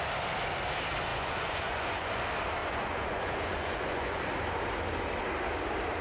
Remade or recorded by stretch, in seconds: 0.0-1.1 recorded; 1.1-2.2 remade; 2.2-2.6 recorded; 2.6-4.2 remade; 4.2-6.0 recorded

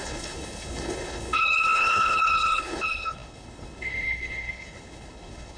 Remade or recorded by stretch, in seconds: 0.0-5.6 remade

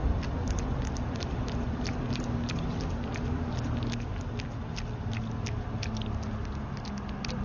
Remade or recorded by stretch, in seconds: 0.0-7.4 recorded

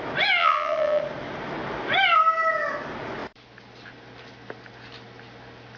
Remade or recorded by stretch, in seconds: 0.0-0.4 recorded; 0.4-1.0 remade; 1.0-5.8 recorded

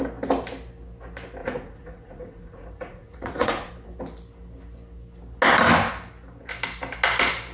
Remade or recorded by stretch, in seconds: 0.0-1.4 recorded; 1.4-3.7 remade; 3.7-7.5 recorded

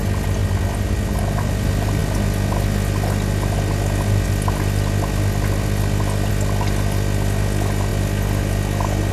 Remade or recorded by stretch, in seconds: 0.0-9.1 recorded

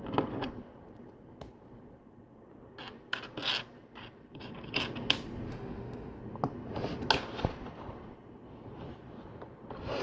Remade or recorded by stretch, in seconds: 0.0-5.5 recorded; 5.5-6.2 remade; 6.2-10.0 recorded

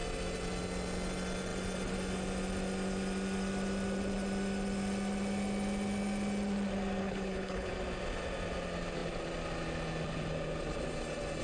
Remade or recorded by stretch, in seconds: 0.0-7.0 recorded; 7.0-7.7 remade; 7.7-11.4 recorded